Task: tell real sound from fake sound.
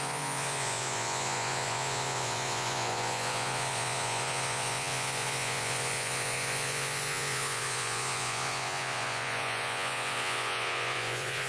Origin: fake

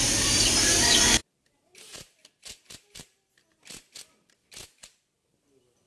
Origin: real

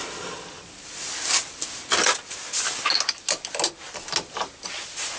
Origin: real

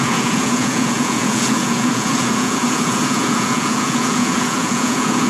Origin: fake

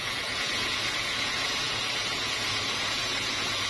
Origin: fake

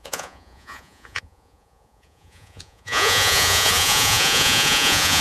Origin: fake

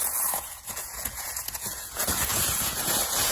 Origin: fake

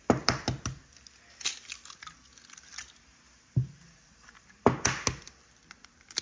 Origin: real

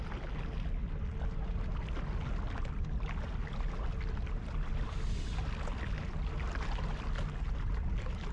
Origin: real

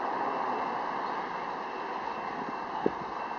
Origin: real